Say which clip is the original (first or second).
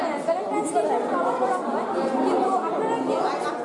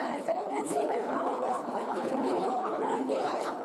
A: first